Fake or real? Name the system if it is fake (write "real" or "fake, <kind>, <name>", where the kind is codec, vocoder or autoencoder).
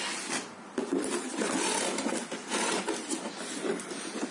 real